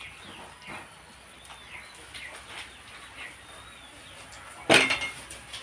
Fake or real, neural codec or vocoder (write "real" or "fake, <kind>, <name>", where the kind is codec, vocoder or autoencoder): real